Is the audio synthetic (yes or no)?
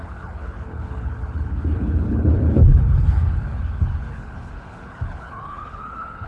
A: yes